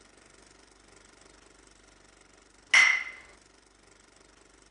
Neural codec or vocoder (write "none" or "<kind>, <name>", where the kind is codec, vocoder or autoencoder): none